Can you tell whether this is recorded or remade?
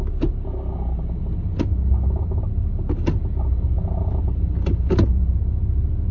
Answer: recorded